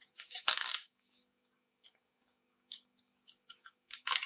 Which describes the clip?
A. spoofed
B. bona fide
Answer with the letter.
A